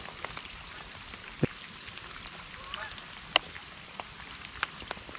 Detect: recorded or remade recorded